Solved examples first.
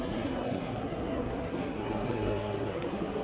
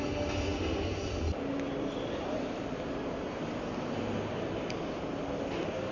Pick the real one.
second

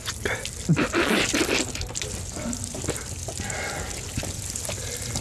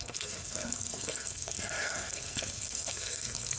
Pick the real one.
first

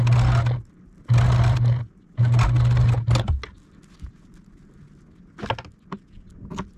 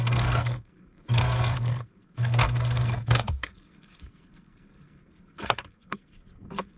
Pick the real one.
first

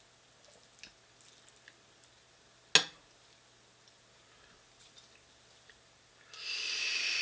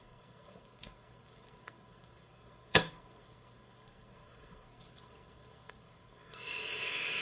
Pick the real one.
first